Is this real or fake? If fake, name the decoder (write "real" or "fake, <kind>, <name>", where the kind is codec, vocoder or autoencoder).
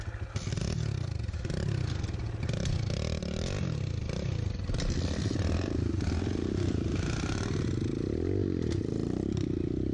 real